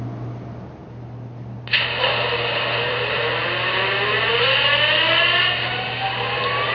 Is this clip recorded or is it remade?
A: recorded